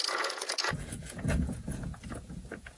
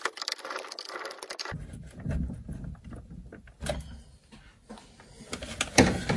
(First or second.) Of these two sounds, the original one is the second